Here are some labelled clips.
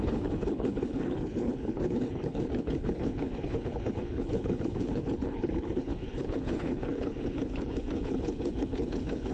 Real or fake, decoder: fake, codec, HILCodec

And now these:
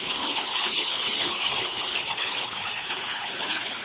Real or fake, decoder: fake, codec, HILCodec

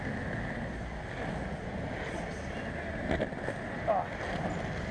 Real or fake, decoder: real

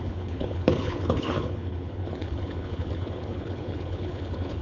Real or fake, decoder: fake, codec, HILCodec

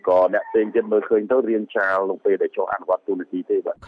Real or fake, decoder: real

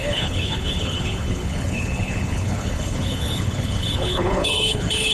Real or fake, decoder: fake, codec, HILCodec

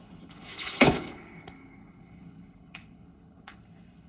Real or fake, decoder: fake, codec, HILCodec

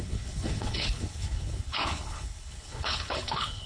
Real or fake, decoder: fake, codec, HILCodec